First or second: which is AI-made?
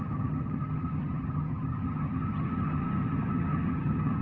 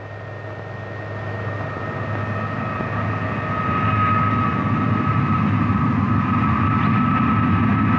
first